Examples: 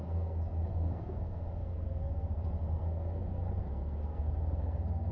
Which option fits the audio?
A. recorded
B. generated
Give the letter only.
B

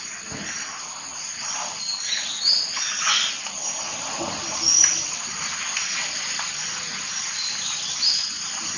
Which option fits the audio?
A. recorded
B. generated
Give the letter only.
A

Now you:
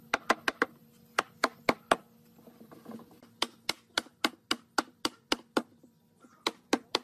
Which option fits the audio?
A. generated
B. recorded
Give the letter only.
B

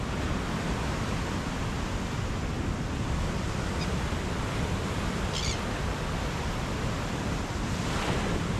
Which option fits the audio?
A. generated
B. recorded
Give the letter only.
B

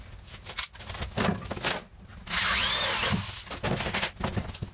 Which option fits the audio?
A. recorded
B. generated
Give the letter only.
A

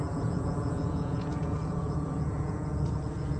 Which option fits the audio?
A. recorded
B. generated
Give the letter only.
B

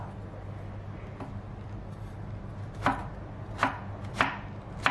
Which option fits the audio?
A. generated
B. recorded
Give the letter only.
B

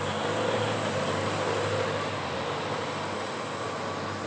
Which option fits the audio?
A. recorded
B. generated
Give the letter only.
A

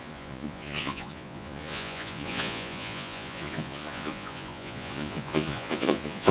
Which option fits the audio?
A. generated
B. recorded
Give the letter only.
A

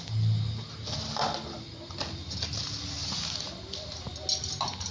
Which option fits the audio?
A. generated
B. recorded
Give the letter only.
B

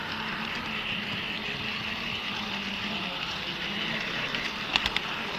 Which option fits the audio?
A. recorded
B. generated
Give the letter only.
B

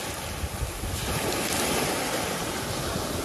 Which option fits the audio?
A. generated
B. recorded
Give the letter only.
B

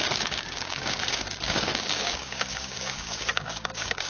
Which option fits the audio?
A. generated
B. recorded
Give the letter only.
A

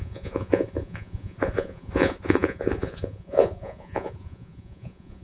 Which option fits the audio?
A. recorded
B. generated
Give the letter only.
B